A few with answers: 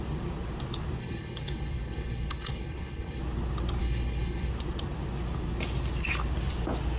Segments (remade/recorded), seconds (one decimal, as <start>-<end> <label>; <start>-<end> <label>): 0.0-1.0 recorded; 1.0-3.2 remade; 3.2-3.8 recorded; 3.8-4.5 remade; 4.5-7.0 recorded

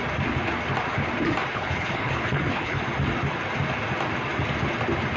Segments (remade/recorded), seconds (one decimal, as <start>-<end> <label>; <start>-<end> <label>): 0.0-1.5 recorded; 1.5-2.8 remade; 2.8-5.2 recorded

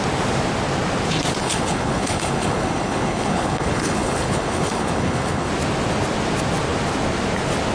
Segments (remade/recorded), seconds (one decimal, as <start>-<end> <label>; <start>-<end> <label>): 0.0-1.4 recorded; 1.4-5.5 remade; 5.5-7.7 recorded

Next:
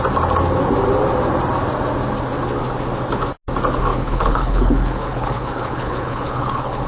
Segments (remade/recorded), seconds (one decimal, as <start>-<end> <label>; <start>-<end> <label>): 0.0-3.9 recorded; 3.9-6.9 remade

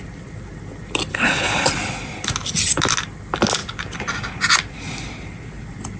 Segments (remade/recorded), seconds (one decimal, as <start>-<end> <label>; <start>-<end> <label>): 0.0-1.1 recorded; 1.1-1.7 remade; 1.7-6.0 recorded

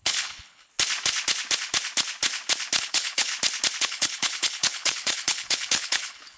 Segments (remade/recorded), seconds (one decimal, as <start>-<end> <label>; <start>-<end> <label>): 0.0-0.7 remade; 0.7-2.8 recorded; 2.8-3.3 remade; 3.3-3.8 recorded; 3.8-6.4 remade

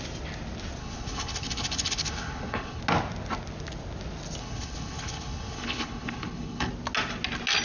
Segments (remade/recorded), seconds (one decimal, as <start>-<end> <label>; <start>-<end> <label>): 0.0-0.8 recorded; 0.8-2.8 remade; 2.8-4.4 recorded; 4.4-6.7 remade; 6.7-7.6 recorded